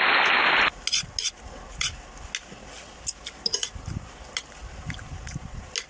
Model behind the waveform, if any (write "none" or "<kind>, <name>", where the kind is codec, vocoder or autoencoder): none